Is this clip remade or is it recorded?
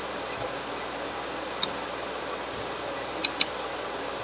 recorded